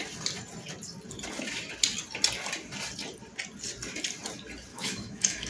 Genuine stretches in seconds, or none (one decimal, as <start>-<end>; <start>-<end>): 0.0-4.7